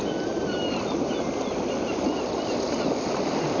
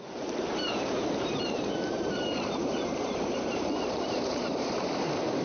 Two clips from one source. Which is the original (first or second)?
first